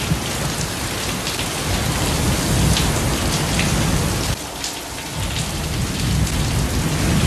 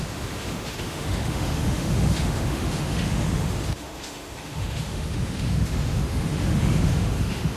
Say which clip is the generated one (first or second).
second